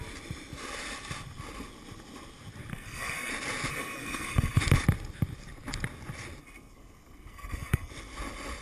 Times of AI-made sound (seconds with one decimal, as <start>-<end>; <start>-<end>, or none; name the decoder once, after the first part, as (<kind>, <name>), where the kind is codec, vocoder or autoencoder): 2.7-3.3 (codec, SNAC); 3.7-4.6; 6.4-7.9